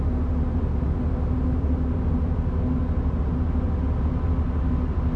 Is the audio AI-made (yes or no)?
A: no